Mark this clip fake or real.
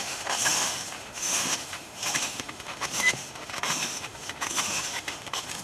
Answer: fake